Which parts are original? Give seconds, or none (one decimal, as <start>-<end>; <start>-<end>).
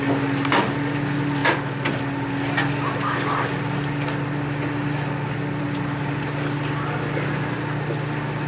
0.0-8.5